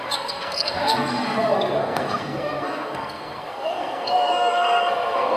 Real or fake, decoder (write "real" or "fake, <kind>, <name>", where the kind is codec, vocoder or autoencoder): fake, codec, SNAC